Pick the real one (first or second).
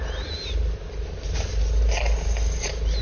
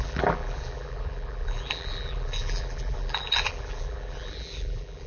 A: first